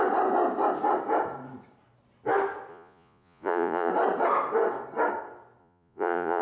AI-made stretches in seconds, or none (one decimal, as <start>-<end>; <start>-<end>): 2.7-3.9; 5.6-6.4